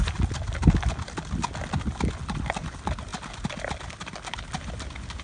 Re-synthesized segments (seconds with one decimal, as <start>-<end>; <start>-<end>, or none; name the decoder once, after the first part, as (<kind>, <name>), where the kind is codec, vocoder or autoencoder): none